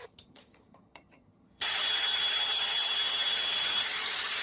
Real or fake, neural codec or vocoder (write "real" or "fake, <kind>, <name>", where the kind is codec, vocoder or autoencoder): fake, vocoder, HiFi-GAN